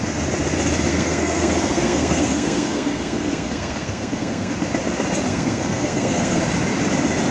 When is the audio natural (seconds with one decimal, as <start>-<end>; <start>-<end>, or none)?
0.0-0.9; 4.5-5.3; 6.4-7.3